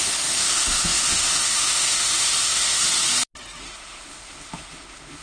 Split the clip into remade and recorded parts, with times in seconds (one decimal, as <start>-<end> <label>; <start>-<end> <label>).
0.0-2.8 remade; 2.8-3.6 recorded; 3.6-5.2 remade